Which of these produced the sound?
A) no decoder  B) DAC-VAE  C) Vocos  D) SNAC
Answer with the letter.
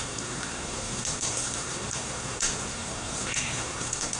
D